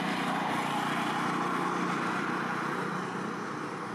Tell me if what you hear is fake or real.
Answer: real